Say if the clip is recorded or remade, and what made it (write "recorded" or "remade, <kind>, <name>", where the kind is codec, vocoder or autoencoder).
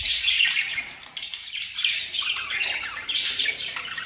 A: remade, vocoder, BigVGAN v2